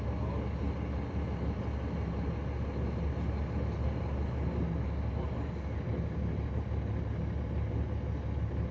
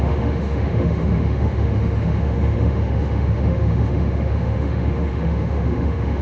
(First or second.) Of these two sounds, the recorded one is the first